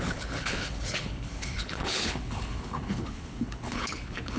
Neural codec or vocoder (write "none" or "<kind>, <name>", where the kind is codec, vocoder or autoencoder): codec, HILCodec